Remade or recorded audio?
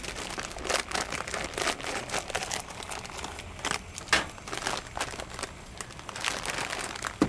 recorded